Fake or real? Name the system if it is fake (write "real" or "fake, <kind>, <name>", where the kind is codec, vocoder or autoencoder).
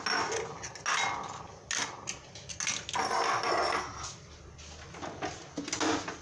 real